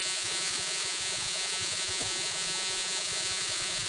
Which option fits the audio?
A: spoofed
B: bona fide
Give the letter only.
A